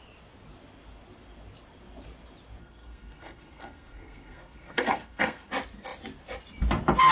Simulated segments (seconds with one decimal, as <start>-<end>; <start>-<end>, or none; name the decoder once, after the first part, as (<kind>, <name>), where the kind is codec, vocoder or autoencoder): 2.6-5.5 (codec, SNAC)